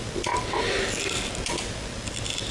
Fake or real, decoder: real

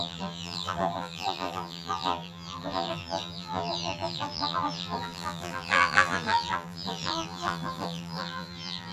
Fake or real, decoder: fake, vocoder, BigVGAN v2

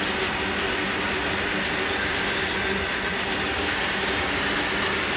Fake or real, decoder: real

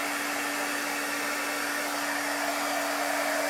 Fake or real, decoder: real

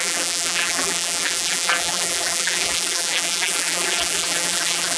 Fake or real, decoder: fake, vocoder, BigVGAN v2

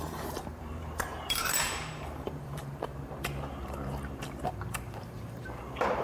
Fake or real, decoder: fake, vocoder, BigVGAN v2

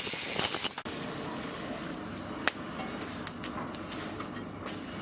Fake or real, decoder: real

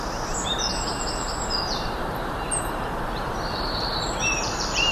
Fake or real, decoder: fake, vocoder, BigVGAN v2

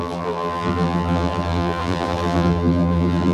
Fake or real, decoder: fake, vocoder, BigVGAN v2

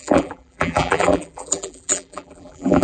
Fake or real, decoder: fake, vocoder, BigVGAN v2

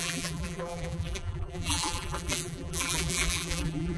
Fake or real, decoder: fake, vocoder, BigVGAN v2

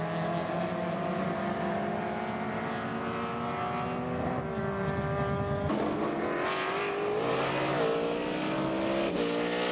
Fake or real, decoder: real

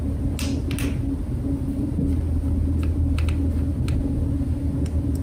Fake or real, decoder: real